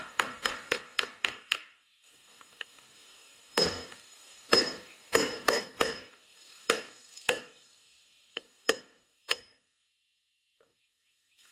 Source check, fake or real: fake